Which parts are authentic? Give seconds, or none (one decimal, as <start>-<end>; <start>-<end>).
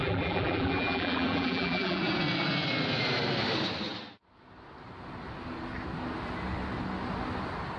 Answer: 2.0-7.8